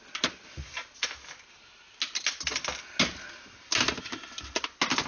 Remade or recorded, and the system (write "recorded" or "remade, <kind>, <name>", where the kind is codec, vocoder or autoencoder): recorded